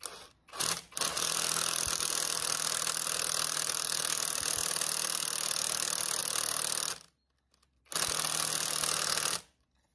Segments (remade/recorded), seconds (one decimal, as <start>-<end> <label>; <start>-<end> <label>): 0.0-9.9 recorded